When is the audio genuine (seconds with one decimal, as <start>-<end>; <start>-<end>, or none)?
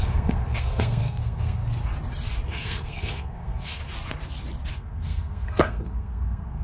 1.6-2.5; 3.8-4.7